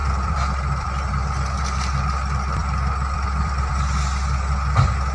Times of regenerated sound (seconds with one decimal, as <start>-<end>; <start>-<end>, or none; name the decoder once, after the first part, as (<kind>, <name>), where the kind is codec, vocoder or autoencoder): 0.0-1.1 (vocoder, BigVGAN v2); 2.6-3.7